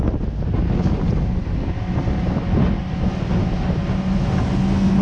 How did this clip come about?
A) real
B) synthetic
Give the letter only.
A